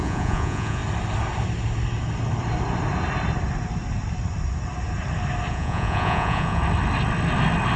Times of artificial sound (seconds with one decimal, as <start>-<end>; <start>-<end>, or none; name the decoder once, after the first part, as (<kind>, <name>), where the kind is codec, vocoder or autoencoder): 0.0-0.8 (vocoder, Vocos); 5.5-6.6